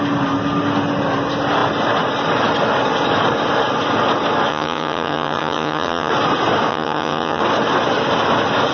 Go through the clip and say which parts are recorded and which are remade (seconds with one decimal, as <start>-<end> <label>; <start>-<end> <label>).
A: 0.0-4.5 recorded; 4.5-6.1 remade; 6.1-6.7 recorded; 6.7-7.4 remade; 7.4-8.7 recorded

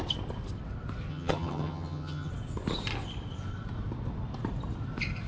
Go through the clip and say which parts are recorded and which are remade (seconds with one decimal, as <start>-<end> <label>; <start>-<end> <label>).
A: 0.0-1.1 recorded; 1.1-2.3 remade; 2.3-5.3 recorded

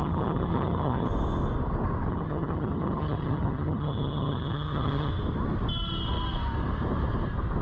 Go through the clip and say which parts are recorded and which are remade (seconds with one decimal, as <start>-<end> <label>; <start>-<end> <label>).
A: 0.0-1.1 remade; 1.1-2.1 recorded; 2.1-5.1 remade; 5.1-7.6 recorded

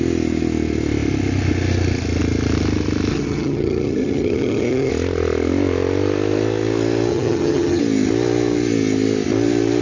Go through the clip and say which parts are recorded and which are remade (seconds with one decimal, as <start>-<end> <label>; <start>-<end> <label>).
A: 0.0-3.1 recorded; 3.1-4.9 remade; 4.9-7.1 recorded; 7.1-7.8 remade; 7.8-9.8 recorded

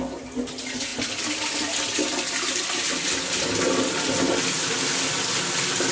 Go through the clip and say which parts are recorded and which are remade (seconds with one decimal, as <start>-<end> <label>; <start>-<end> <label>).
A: 0.0-5.9 recorded

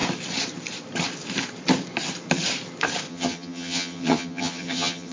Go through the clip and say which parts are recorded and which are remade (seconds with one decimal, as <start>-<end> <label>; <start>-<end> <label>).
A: 0.0-3.1 recorded; 3.1-5.1 remade